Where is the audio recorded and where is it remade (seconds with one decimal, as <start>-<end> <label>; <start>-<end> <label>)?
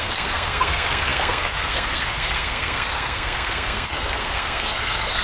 0.0-5.2 remade